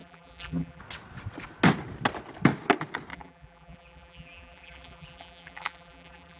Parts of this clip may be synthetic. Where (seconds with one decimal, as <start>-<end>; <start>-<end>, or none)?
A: 0.0-0.8; 3.1-6.4